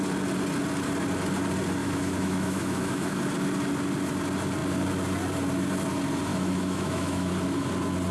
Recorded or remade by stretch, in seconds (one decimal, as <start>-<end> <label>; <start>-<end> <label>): 0.0-1.8 recorded; 1.8-3.2 remade; 3.2-6.3 recorded; 6.3-7.3 remade; 7.3-8.1 recorded